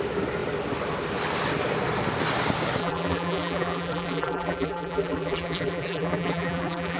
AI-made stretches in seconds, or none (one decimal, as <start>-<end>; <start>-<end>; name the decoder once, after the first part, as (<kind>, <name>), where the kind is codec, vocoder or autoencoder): 2.8-7.0 (vocoder, BigVGAN v2)